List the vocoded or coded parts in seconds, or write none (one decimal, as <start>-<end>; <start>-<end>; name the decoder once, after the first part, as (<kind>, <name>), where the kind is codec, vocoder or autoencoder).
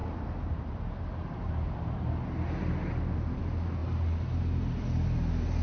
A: none